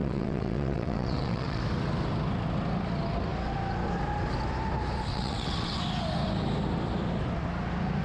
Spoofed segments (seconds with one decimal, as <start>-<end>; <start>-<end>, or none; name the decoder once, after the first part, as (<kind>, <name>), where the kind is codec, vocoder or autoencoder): 0.0-1.6 (vocoder, WaveNeXt); 5.1-5.8